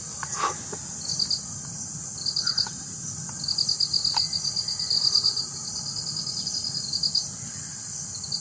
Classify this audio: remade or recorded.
recorded